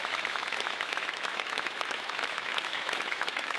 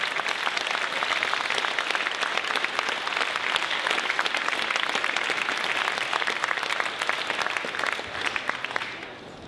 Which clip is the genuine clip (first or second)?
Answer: second